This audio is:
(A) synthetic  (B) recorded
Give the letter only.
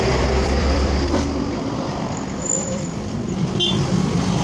A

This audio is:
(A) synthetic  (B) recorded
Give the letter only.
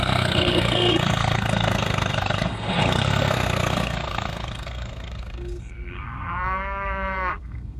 A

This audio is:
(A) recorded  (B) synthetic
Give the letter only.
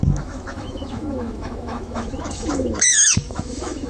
B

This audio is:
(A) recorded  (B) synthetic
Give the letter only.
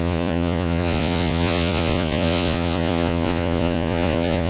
B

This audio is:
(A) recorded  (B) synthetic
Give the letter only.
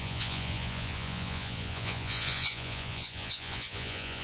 B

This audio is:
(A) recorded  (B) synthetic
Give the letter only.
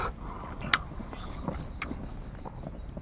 A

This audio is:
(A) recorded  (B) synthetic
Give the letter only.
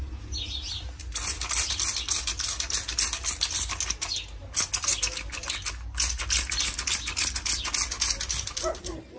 A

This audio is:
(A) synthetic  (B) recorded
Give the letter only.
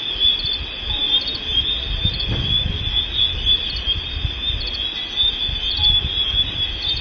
B